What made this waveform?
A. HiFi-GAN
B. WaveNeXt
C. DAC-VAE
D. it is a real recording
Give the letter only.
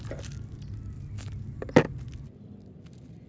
D